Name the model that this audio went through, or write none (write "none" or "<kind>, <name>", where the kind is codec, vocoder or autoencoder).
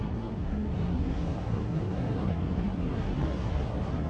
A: codec, SNAC